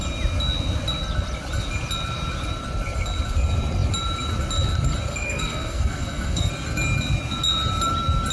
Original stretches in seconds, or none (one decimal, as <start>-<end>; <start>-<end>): 0.0-5.1; 6.5-8.3